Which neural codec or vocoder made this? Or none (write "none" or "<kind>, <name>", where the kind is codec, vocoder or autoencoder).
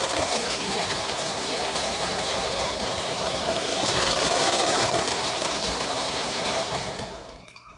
codec, SNAC